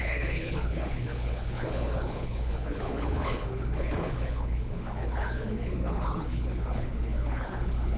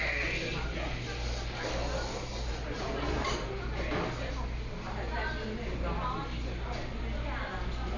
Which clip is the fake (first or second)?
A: first